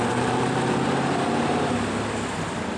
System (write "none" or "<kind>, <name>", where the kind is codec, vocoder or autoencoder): none